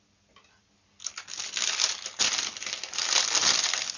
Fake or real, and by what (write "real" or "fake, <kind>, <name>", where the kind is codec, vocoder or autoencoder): real